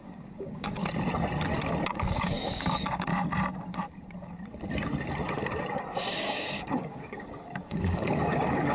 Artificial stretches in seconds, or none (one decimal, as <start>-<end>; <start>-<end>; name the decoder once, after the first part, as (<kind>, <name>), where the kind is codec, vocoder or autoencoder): 0.0-0.8 (codec, DAC); 1.9-3.1; 5.8-8.7